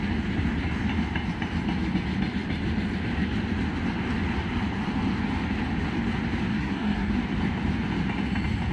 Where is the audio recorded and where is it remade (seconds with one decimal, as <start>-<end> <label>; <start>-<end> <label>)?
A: 0.0-6.5 recorded; 6.5-7.1 remade; 7.1-8.7 recorded